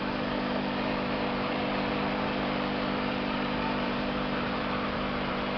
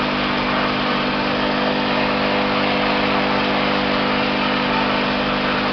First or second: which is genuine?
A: second